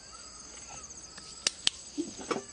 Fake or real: real